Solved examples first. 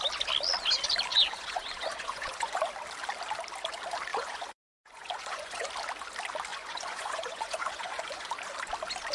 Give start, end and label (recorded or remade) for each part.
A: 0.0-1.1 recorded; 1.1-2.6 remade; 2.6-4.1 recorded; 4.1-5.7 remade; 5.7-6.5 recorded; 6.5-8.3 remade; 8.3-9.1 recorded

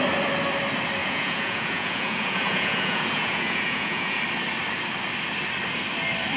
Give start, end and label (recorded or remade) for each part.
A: 0.0-1.0 recorded; 1.0-4.2 remade; 4.2-6.4 recorded